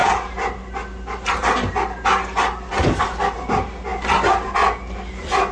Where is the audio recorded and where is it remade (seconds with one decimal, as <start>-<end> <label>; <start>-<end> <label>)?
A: 0.0-5.5 recorded